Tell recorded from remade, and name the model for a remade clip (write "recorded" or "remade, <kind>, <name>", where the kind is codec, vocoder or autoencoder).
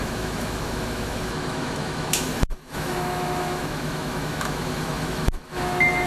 remade, autoencoder, DAC-VAE